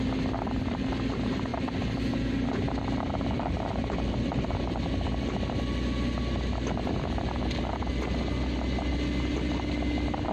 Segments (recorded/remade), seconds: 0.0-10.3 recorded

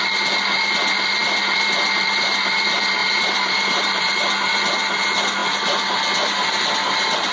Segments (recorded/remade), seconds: 0.0-3.0 recorded; 3.0-4.2 remade; 4.2-7.3 recorded

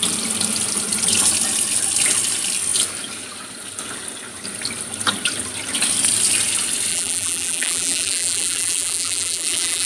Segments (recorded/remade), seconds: 0.0-6.9 recorded; 6.9-9.9 remade

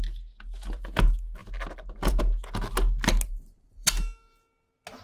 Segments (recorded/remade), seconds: 0.0-3.3 recorded; 3.3-3.9 remade; 3.9-5.0 recorded

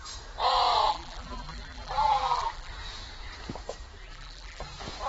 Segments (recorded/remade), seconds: 0.0-0.9 recorded; 0.9-2.7 remade; 2.7-4.0 recorded; 4.0-4.6 remade; 4.6-5.1 recorded

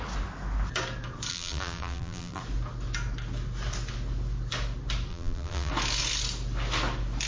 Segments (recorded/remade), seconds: 0.0-1.3 recorded; 1.3-2.4 remade; 2.4-5.1 recorded; 5.1-5.7 remade; 5.7-7.3 recorded

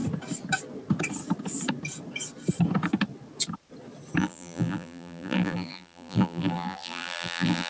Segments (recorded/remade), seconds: 0.0-4.2 recorded; 4.2-7.7 remade

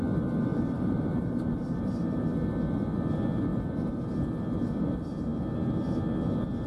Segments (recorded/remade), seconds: 0.0-0.5 recorded; 0.5-2.2 remade; 2.2-6.7 recorded